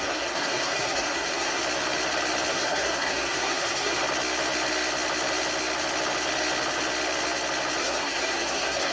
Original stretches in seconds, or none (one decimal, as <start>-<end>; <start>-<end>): 1.6-2.5; 4.0-7.8